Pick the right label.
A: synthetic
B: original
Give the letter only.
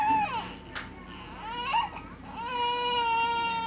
B